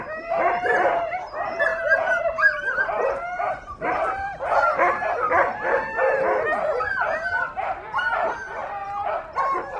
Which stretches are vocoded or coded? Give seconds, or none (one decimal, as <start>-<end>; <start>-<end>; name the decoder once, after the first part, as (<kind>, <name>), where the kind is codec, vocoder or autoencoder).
none